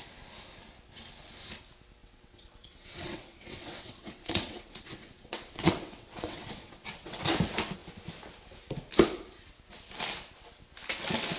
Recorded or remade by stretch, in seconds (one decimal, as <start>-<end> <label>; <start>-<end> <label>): 0.0-2.0 recorded; 2.0-7.2 remade; 7.2-11.4 recorded